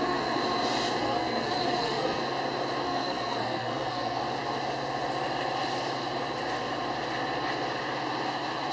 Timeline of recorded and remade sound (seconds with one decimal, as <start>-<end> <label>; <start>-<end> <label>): 0.0-0.4 remade; 0.4-1.0 recorded; 1.0-2.2 remade; 2.2-2.8 recorded; 2.8-4.2 remade; 4.2-8.7 recorded